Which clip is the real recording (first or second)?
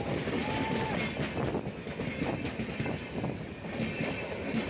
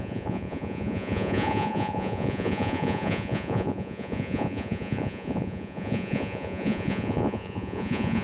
first